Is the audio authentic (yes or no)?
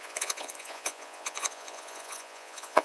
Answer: no